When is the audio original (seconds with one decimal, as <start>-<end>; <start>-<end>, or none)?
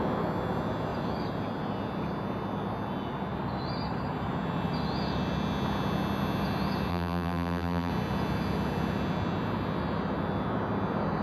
0.0-6.9; 7.9-11.2